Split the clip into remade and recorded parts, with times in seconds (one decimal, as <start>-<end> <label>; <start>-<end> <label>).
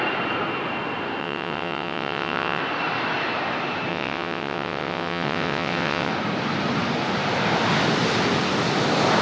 0.0-1.2 recorded; 1.2-2.6 remade; 2.6-3.9 recorded; 3.9-6.1 remade; 6.1-9.2 recorded